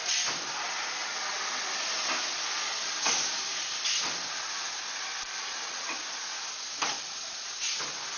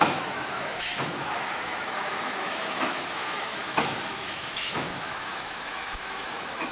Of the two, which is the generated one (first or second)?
second